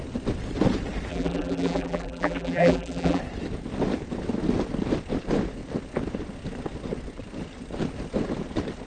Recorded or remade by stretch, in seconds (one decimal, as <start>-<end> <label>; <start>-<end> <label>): 0.0-1.1 recorded; 1.1-3.2 remade; 3.2-8.9 recorded